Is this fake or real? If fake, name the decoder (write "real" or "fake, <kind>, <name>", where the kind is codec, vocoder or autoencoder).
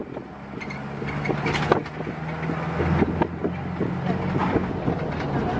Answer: real